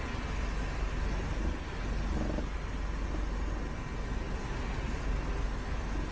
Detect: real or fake real